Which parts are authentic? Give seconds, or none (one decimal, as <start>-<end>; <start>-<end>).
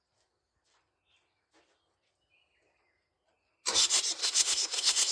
0.0-4.2